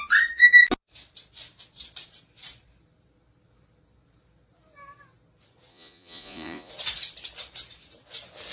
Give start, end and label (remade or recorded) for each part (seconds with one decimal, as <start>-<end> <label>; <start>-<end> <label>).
0.0-5.7 recorded; 5.7-6.7 remade; 6.7-8.5 recorded